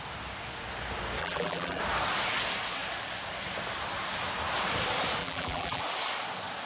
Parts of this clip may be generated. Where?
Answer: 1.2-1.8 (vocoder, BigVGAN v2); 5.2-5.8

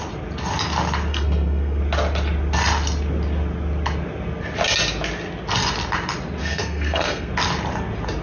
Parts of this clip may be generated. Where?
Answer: 1.1-1.8 (codec, SNAC); 6.4-7.3

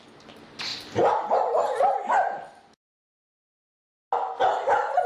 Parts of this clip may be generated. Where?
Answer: none

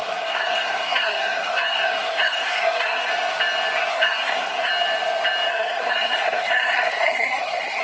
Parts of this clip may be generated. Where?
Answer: 0.0-3.1 (codec, SNAC); 3.9-4.7; 5.5-7.8

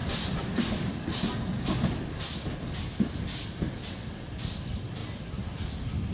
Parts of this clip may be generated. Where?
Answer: 0.0-0.6 (vocoder, BigVGAN v2); 5.0-6.1

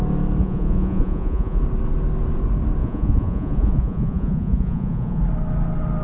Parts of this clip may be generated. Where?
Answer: 0.4-1.6 (vocoder, Vocos); 2.8-5.2

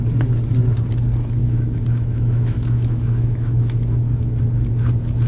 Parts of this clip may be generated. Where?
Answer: 1.4-4.4 (autoencoder, DAC-VAE)

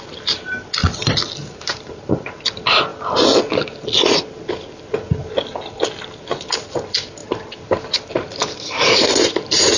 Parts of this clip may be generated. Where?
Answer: 1.4-2.4 (vocoder, BigVGAN v2); 7.2-9.8